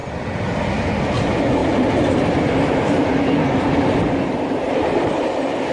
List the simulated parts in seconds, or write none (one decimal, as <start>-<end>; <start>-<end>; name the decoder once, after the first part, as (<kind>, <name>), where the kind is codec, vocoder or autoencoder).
1.0-5.7 (vocoder, BigVGAN v2)